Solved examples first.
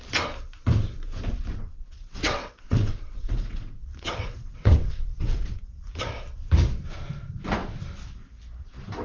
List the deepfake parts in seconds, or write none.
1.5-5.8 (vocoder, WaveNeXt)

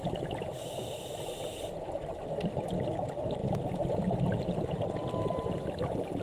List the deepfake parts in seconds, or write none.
0.0-0.9 (vocoder, BigVGAN v2)

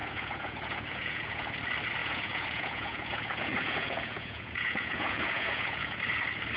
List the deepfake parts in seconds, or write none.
0.0-1.5 (vocoder, Vocos); 2.0-6.0